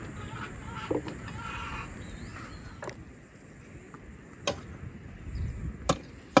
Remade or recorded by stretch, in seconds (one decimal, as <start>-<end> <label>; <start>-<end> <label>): 0.0-6.4 recorded